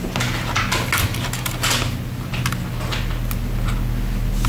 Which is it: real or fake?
real